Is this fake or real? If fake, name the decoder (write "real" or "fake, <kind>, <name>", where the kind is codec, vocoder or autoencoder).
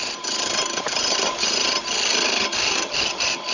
real